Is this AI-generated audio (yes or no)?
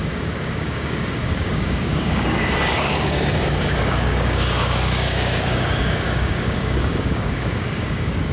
yes